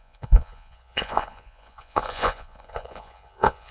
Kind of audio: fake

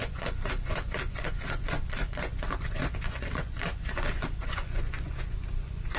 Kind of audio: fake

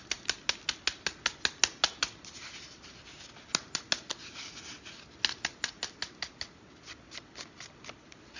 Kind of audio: real